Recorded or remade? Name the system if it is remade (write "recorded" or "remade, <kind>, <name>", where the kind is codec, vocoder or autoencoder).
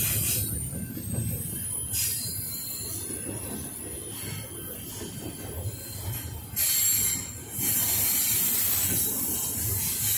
recorded